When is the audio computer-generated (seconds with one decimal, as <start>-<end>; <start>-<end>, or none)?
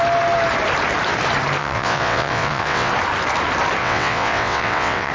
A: 1.6-2.9; 3.8-5.1